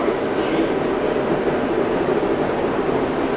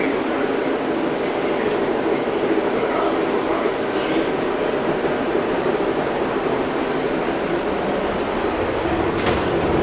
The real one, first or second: first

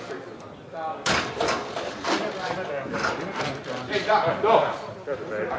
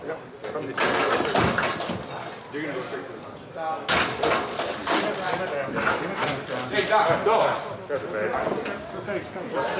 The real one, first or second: second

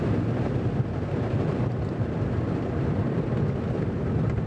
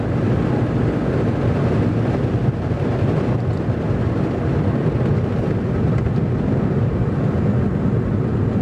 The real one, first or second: second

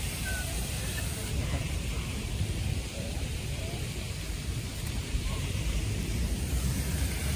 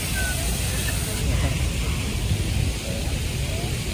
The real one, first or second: second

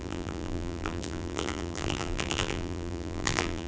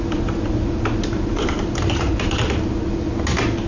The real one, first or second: second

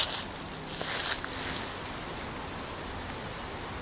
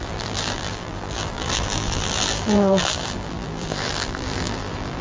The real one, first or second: first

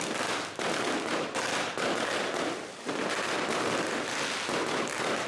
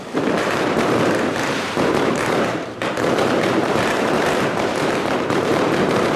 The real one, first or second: first